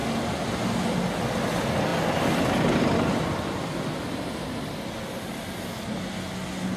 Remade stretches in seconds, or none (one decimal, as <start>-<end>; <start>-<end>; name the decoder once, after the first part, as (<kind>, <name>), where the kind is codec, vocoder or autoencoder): none

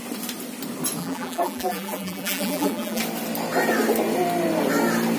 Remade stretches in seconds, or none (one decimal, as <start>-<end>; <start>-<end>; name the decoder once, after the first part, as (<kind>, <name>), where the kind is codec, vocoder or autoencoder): 1.0-3.0 (vocoder, BigVGAN v2)

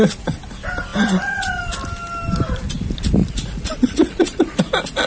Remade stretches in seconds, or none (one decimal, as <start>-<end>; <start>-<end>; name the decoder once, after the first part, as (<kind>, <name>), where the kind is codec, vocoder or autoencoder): 3.2-4.6 (vocoder, Vocos)

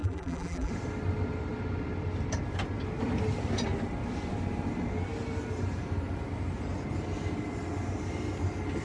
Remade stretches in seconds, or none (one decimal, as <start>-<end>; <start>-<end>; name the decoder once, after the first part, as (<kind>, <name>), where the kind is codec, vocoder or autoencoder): 0.0-0.7 (vocoder, BigVGAN v2)

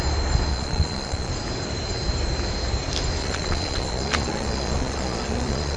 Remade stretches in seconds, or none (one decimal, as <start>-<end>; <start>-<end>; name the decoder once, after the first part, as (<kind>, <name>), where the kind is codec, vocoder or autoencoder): 0.5-1.3 (vocoder, Vocos); 3.2-5.8

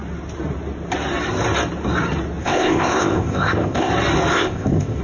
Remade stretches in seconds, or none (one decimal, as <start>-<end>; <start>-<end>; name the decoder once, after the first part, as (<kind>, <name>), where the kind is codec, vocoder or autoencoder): 2.4-3.9 (codec, ZipCodec); 4.3-5.0

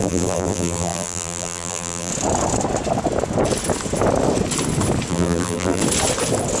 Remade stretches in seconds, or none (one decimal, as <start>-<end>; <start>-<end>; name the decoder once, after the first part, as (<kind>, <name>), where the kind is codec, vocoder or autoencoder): 0.0-2.1 (vocoder, BigVGAN v2); 5.1-5.8

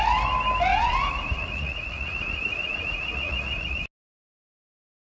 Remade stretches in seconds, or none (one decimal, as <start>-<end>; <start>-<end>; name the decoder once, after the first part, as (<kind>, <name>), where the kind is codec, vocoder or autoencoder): 0.7-3.8 (vocoder, Vocos)